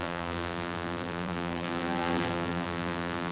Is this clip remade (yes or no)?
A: yes